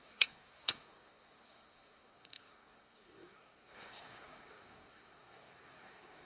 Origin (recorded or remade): remade